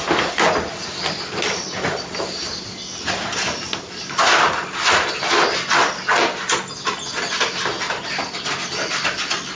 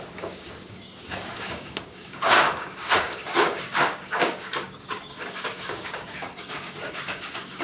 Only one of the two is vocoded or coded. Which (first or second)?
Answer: second